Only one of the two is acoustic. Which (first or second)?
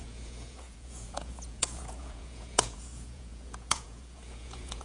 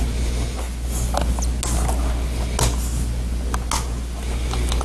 second